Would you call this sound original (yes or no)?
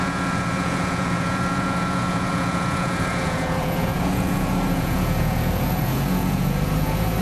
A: no